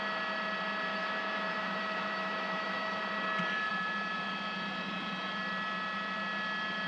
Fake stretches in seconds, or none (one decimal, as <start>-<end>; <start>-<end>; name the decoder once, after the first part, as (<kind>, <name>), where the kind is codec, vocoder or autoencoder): 0.9-3.0 (autoencoder, DAC-VAE)